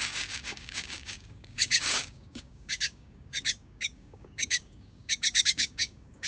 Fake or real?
fake